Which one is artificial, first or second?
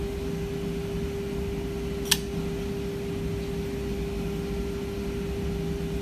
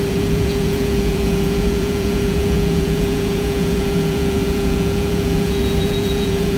second